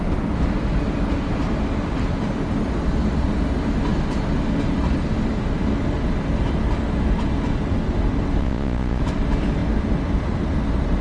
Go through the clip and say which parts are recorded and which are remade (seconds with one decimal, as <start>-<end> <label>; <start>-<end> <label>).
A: 0.0-8.4 recorded; 8.4-9.0 remade; 9.0-11.0 recorded